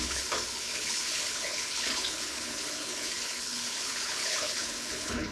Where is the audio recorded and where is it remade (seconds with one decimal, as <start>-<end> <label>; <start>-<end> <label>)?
0.0-5.3 remade